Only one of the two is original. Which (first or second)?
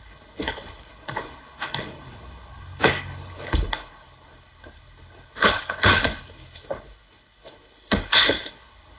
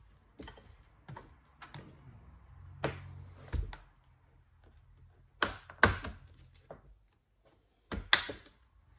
second